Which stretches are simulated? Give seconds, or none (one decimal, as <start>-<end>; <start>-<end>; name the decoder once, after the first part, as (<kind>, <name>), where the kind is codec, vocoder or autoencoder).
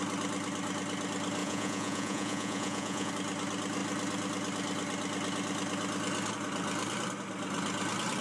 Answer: 1.4-3.1 (vocoder, Vocos)